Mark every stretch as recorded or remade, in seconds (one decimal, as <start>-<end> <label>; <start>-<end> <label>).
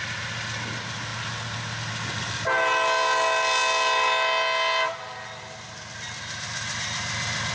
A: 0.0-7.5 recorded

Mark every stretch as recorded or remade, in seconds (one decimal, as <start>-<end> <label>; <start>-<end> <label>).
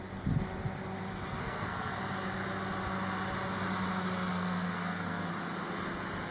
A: 0.0-1.4 recorded; 1.4-2.0 remade; 2.0-4.3 recorded; 4.3-5.3 remade; 5.3-6.3 recorded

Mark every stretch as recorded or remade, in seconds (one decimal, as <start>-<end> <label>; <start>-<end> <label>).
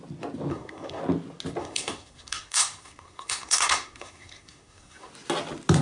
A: 0.0-0.5 recorded; 0.5-1.0 remade; 1.0-1.6 recorded; 1.6-5.1 remade; 5.1-5.8 recorded